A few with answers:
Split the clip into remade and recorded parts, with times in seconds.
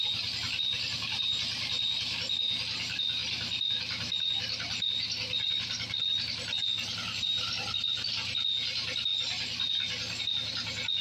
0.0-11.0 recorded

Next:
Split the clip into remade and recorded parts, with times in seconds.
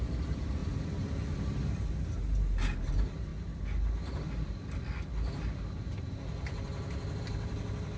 0.0-0.6 remade; 0.6-2.9 recorded; 2.9-3.3 remade; 3.3-7.2 recorded; 7.2-8.0 remade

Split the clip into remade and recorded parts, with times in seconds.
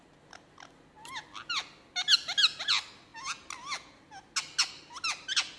0.0-5.6 recorded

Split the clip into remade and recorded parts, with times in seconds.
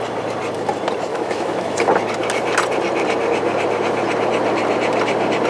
0.0-1.1 recorded; 1.1-1.8 remade; 1.8-5.5 recorded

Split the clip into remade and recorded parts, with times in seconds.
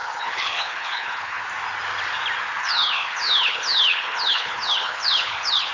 0.0-1.4 remade; 1.4-2.6 recorded; 2.6-5.7 remade